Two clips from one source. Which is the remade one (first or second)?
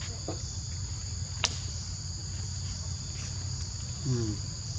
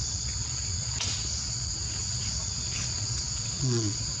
second